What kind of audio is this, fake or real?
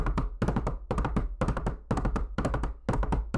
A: real